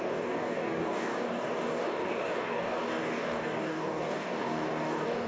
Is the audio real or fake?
fake